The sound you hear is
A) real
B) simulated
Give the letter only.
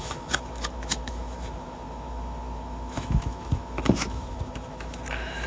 B